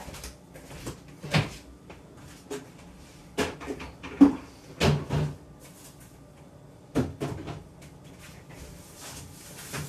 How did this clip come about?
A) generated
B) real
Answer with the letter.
B